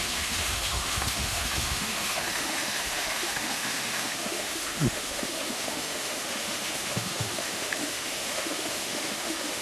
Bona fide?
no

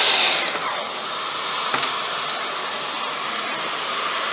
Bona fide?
yes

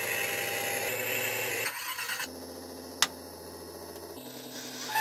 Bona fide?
yes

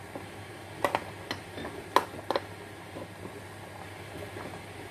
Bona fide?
yes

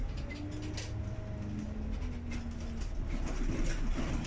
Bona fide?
yes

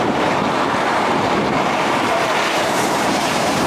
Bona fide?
no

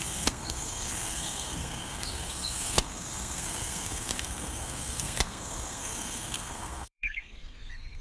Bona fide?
no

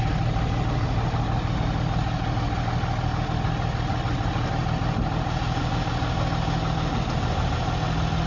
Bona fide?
yes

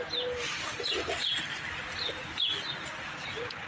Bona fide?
yes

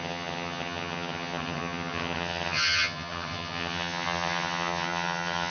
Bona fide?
no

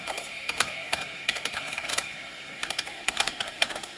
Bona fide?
no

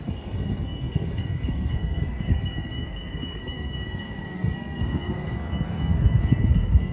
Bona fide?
no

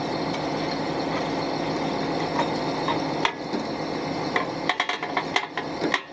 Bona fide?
yes